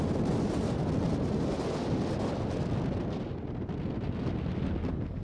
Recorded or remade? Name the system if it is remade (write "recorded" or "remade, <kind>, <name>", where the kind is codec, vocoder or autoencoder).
recorded